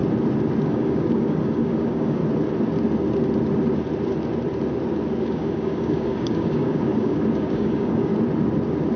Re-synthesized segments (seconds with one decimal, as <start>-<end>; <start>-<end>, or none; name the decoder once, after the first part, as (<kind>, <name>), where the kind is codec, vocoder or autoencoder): 0.6-2.2 (codec, DAC); 5.2-8.1